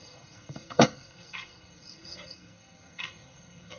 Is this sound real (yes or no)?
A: no